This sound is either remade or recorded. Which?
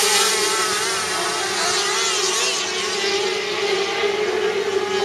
recorded